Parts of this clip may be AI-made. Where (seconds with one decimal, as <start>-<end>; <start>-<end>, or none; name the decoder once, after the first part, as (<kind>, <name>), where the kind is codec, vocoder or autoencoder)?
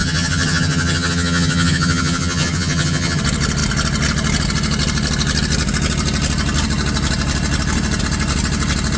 0.0-3.2 (vocoder, HiFi-GAN)